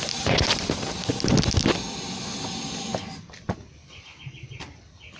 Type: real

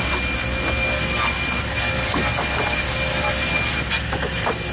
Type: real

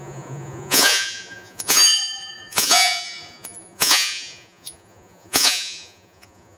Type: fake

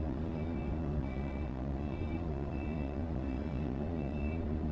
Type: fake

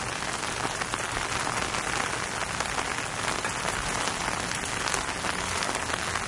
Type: real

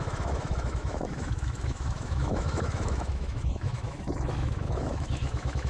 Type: fake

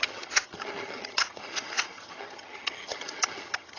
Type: fake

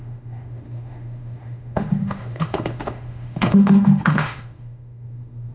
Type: fake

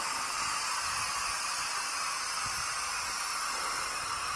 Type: real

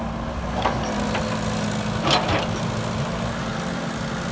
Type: real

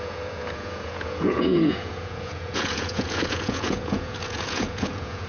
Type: fake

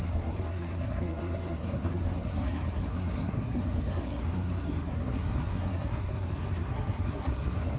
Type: fake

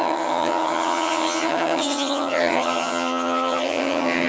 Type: fake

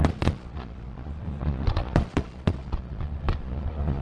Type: fake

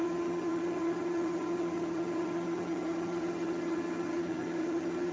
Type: fake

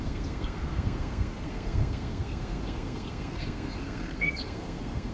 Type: fake